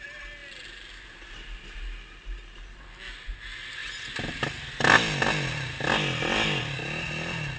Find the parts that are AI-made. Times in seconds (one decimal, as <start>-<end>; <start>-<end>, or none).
none